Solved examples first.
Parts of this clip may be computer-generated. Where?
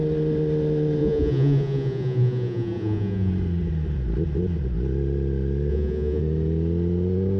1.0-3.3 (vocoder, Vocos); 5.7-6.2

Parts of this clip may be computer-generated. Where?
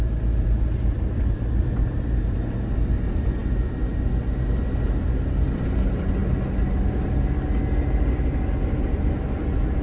none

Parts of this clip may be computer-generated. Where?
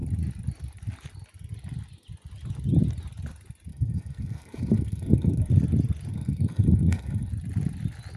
3.7-5.5 (codec, SNAC); 6.1-7.3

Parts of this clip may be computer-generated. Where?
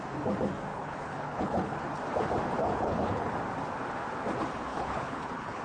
0.7-1.8 (codec, HILCodec); 2.6-3.3; 4.7-5.6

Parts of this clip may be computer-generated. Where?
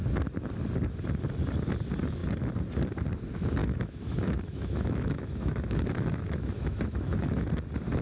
3.6-7.5 (autoencoder, DAC-VAE)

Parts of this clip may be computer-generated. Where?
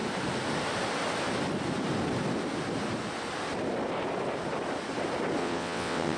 5.4-6.2 (vocoder, WaveNeXt)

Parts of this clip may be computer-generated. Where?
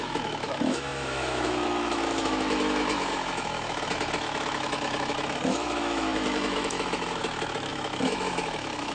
0.0-8.9 (autoencoder, DAC-VAE)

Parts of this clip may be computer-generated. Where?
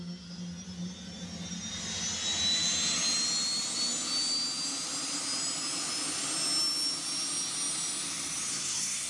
8.5-9.1 (codec, SNAC)